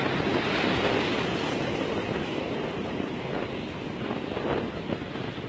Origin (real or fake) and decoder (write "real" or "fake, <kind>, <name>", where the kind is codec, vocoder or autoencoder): real